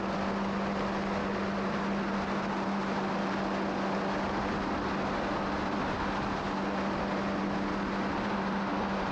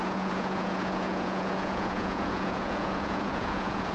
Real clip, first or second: first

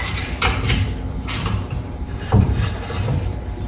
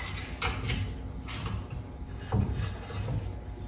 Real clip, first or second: second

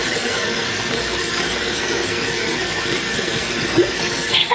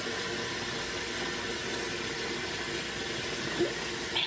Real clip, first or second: second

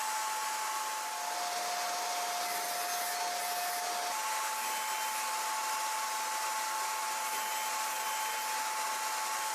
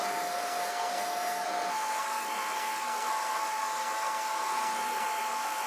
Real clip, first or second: first